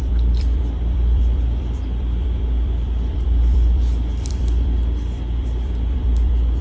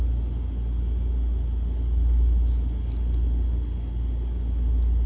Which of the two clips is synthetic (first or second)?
first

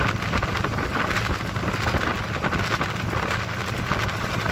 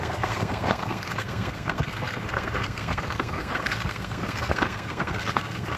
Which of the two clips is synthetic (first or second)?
second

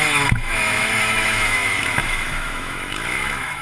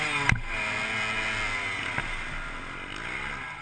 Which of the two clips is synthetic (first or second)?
first